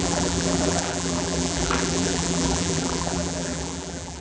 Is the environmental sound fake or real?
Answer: fake